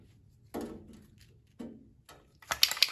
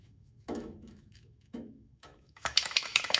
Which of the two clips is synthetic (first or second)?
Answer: second